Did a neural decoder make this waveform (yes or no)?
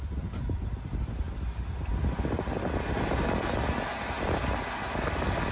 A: no